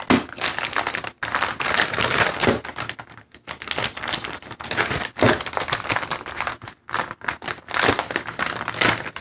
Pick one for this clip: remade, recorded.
recorded